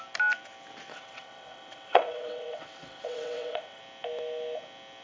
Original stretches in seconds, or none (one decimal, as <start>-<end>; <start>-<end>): 0.0-0.9; 3.8-5.0